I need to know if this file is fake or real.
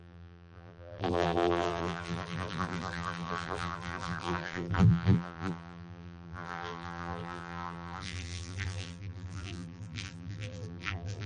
fake